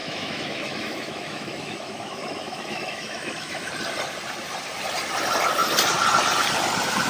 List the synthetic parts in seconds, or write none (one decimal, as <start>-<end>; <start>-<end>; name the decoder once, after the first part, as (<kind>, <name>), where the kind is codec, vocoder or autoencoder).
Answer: 0.0-3.7 (autoencoder, DAC-VAE)